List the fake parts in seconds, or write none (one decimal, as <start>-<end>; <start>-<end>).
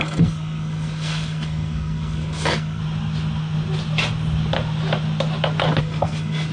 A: 0.0-2.8; 5.8-6.5